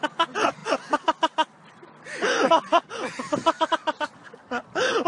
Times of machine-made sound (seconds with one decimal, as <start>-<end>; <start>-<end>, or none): none